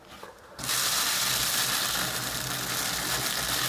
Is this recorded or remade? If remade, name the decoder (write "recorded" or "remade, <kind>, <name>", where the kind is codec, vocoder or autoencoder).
recorded